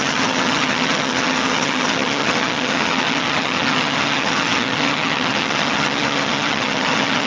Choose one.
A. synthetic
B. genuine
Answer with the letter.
A